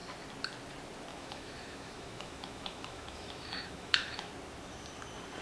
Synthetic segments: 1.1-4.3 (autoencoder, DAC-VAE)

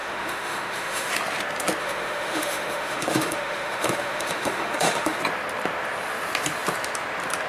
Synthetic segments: 0.0-1.1 (autoencoder, DAC-VAE); 1.8-5.2

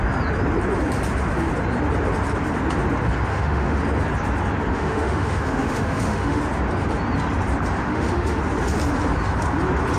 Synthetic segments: 3.3-3.8 (autoencoder, DAC-VAE); 4.7-6.4; 7.8-8.4

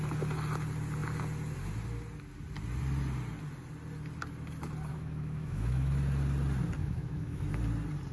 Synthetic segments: 4.9-5.9 (autoencoder, DAC-VAE); 6.8-7.6

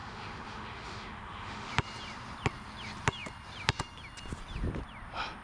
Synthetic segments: 0.0-1.7 (autoencoder, DAC-VAE)

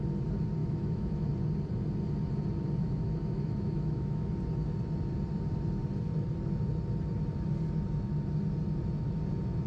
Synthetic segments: 0.6-1.3 (autoencoder, DAC-VAE); 2.8-4.3

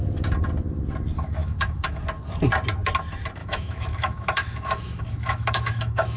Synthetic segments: 1.4-2.0 (autoencoder, DAC-VAE); 3.4-6.2